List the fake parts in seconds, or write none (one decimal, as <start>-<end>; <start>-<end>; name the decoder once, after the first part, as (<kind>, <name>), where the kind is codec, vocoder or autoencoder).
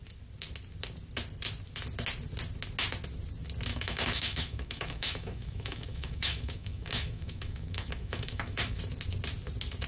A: 3.7-8.8 (autoencoder, DAC-VAE)